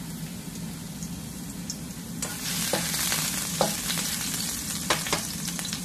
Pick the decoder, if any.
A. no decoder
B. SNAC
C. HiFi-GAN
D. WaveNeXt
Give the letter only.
A